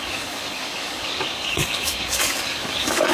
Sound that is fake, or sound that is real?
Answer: fake